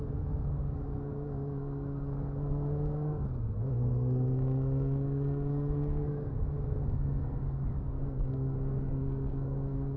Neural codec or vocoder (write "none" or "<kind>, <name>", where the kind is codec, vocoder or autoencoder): codec, SNAC